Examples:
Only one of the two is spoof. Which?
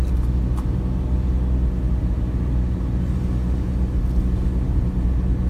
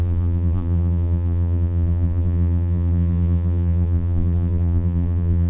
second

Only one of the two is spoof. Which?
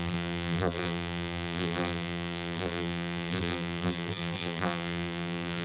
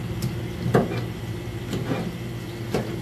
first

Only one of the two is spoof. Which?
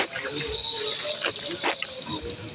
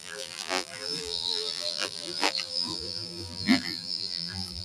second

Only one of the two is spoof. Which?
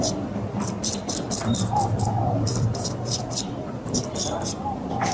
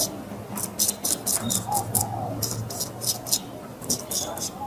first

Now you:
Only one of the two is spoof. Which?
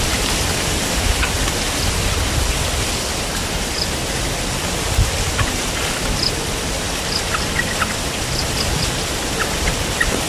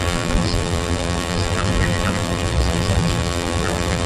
second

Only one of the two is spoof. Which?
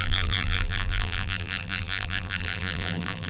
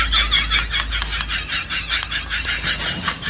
first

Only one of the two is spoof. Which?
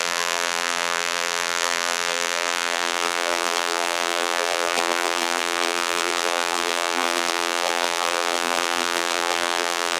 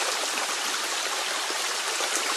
first